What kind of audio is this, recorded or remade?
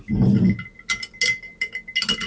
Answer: recorded